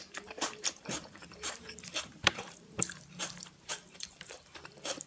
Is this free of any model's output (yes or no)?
no